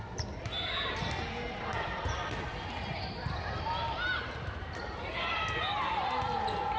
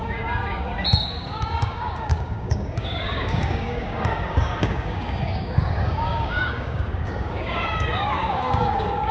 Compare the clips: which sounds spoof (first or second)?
second